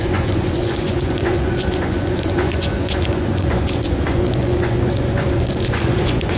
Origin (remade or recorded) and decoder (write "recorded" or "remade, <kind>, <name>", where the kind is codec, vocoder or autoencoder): remade, vocoder, Vocos